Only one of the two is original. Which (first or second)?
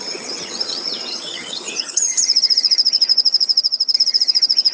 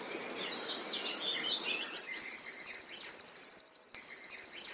second